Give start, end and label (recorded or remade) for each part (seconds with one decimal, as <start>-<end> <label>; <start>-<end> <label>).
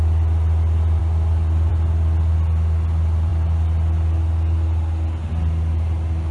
0.0-6.3 recorded